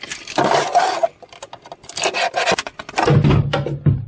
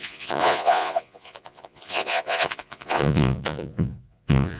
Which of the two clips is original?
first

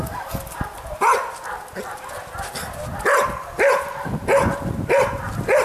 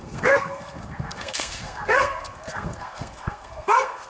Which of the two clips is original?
first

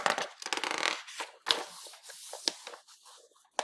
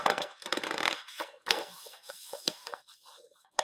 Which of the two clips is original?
first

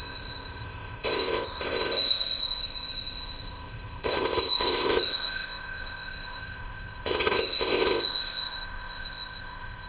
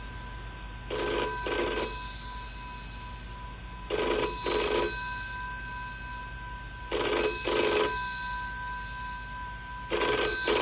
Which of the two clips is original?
second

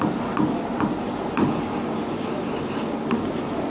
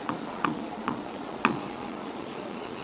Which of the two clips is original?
first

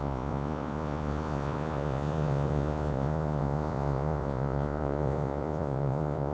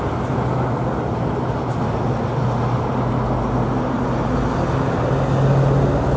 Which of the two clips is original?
second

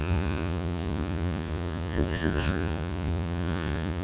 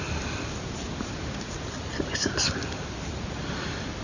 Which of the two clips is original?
second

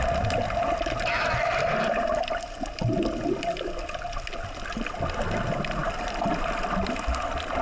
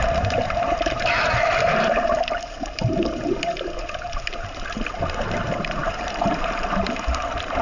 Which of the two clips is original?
first